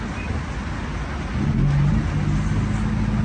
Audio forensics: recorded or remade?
recorded